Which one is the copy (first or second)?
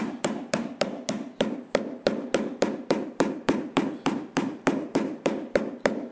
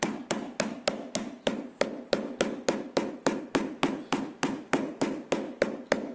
first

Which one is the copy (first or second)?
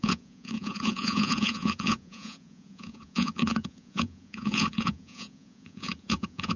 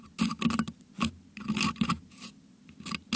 first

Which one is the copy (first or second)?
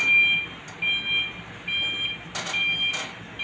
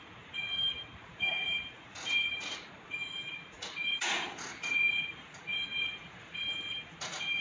second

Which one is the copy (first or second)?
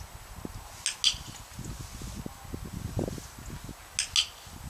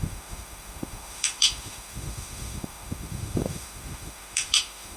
second